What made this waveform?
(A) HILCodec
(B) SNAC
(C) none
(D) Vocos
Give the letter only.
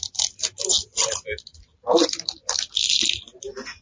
C